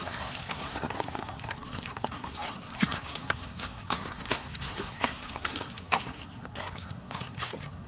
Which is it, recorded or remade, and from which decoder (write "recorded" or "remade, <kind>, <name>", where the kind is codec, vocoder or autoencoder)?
remade, codec, SNAC